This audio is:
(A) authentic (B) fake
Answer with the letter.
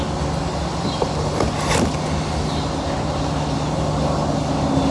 A